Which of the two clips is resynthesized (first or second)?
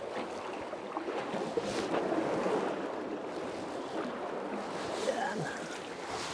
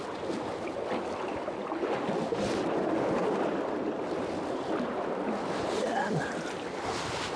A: second